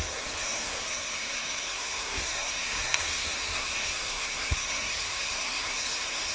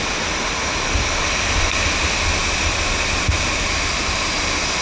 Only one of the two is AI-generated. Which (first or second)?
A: first